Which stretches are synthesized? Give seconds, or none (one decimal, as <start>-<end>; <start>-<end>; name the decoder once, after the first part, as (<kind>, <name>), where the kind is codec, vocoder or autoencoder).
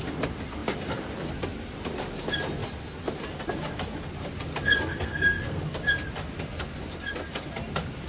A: 4.9-5.6 (codec, SNAC)